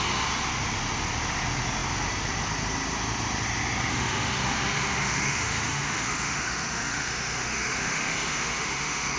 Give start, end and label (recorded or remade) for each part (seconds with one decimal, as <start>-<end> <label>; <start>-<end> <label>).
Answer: 0.0-3.9 recorded; 3.9-9.2 remade